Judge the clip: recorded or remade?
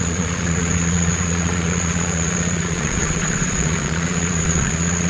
remade